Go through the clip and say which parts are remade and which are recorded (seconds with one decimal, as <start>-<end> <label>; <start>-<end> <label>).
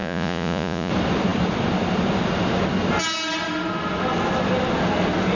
0.0-0.9 remade; 0.9-5.3 recorded